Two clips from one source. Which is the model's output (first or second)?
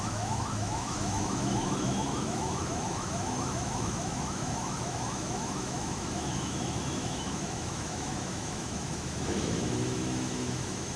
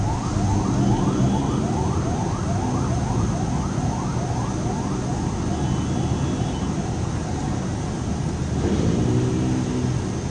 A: first